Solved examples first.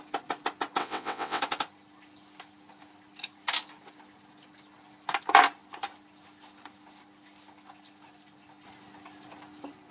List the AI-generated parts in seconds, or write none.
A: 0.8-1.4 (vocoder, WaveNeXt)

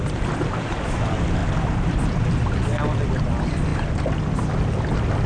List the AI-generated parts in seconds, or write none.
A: none